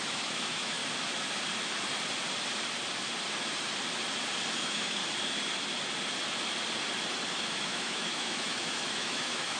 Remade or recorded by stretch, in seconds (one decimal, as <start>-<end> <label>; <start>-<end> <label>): 0.0-0.8 remade; 0.8-4.6 recorded; 4.6-5.0 remade; 5.0-7.3 recorded; 7.3-9.6 remade